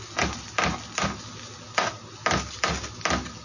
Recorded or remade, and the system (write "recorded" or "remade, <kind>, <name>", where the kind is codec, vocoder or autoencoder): recorded